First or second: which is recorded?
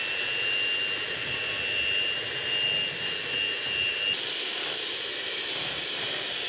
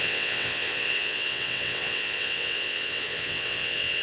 first